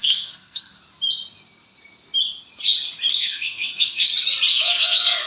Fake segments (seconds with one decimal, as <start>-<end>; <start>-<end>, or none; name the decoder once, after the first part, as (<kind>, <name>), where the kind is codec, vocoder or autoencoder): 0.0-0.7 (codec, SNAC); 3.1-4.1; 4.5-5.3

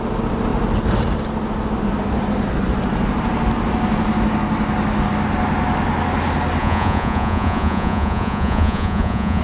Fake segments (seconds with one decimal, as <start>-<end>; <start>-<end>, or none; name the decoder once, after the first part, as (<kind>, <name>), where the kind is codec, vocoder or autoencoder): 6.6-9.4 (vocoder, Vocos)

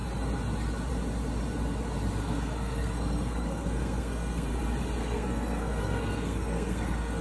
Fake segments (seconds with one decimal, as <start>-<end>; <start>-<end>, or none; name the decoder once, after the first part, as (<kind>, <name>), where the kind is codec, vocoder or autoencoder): 2.2-4.6 (codec, SNAC); 5.0-7.2

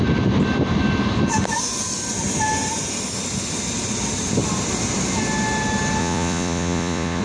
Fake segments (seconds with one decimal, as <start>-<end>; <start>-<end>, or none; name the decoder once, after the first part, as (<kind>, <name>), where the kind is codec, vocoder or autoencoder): 6.0-7.2 (vocoder, Vocos)

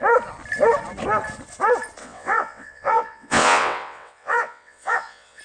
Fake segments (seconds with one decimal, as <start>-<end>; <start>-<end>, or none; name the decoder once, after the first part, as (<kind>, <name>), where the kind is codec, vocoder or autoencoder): 2.0-5.4 (vocoder, WaveNeXt)

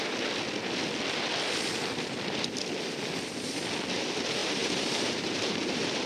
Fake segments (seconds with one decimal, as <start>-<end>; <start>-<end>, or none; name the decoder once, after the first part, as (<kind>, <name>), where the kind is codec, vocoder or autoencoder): 4.4-6.1 (vocoder, BigVGAN v2)

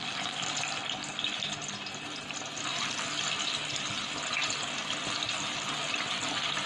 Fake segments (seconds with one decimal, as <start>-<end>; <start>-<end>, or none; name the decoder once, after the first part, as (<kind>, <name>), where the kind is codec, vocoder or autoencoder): none

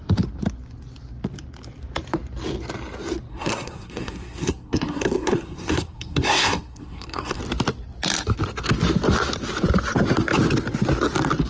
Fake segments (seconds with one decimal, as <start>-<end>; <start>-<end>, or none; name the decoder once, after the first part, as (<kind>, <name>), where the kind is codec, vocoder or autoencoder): 3.3-7.4 (codec, SNAC)